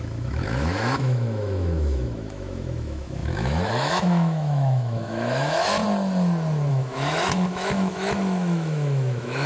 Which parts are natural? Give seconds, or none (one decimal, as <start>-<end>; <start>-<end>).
5.8-6.7